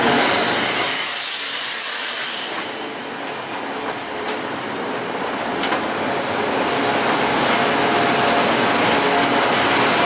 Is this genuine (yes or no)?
yes